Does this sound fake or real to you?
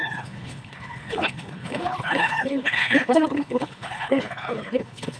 fake